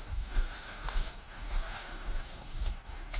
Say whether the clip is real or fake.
fake